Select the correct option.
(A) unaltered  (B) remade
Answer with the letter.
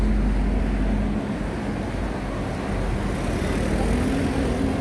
A